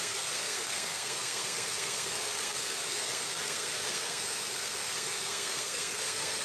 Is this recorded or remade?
remade